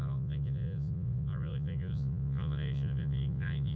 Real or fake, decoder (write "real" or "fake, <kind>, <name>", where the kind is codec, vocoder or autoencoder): fake, vocoder, Vocos